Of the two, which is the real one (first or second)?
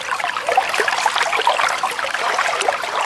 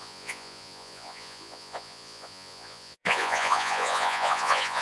first